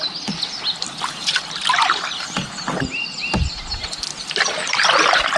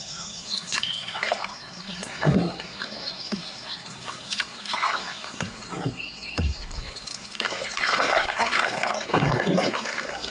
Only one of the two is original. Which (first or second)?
first